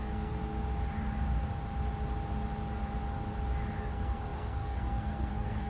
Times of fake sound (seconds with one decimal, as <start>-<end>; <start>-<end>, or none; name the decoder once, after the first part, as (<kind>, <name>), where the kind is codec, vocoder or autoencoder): 0.0-0.4 (codec, SNAC); 3.8-5.7